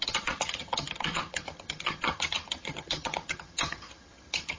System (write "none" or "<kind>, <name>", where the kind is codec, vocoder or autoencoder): vocoder, HiFi-GAN